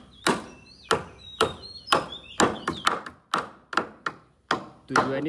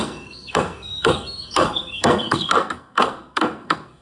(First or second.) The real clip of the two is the first